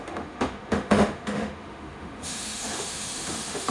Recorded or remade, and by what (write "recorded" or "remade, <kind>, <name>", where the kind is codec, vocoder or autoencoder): remade, autoencoder, DAC-VAE